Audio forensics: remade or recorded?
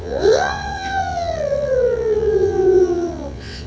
remade